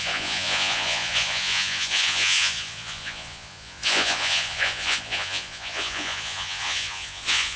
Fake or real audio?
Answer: fake